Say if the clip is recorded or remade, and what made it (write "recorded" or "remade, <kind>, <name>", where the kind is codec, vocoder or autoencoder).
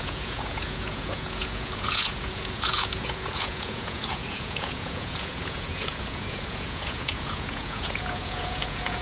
remade, vocoder, Vocos